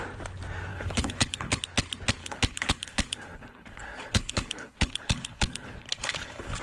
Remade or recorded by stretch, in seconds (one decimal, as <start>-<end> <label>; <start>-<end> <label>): 0.0-0.7 recorded; 0.7-1.6 remade; 1.6-2.2 recorded; 2.2-6.6 remade